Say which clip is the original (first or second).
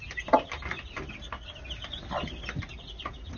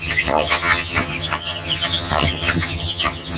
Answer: first